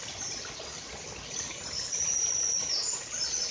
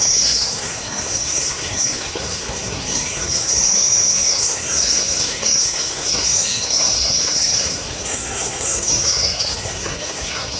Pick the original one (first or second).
first